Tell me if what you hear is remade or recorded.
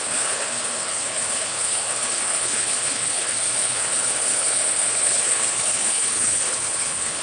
remade